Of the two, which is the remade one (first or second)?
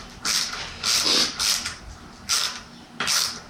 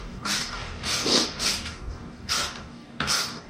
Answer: second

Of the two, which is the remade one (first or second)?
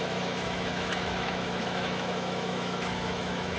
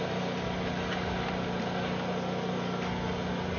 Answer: first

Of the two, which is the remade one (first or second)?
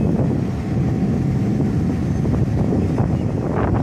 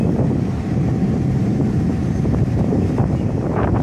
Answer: second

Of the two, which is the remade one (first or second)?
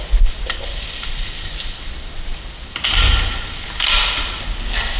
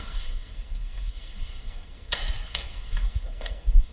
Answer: second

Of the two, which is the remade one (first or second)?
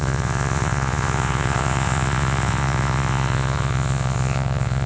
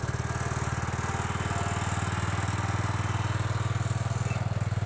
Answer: first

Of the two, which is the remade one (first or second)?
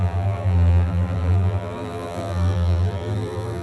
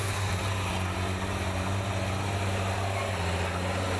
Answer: first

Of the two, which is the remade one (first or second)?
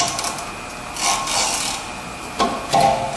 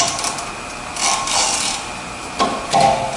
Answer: second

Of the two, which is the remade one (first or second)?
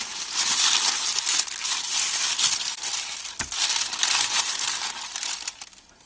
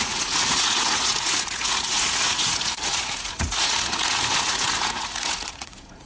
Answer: second